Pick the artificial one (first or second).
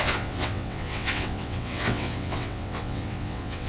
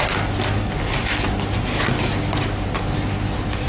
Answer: first